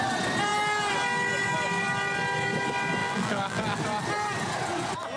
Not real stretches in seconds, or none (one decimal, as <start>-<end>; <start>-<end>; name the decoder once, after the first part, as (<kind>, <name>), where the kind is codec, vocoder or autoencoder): 3.0-3.8 (vocoder, BigVGAN v2)